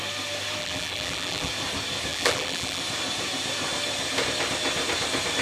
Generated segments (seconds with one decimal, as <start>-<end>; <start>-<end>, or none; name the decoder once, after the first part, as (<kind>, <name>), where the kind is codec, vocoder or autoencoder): 0.6-1.5 (vocoder, BigVGAN v2); 2.1-2.8